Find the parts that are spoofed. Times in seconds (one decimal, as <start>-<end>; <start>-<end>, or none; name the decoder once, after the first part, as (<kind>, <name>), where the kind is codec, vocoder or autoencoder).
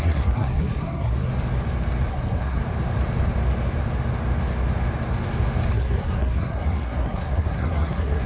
0.0-1.3 (codec, SNAC); 2.1-2.6; 5.7-8.3